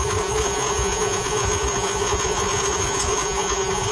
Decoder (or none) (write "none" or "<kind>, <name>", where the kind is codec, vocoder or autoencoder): vocoder, Vocos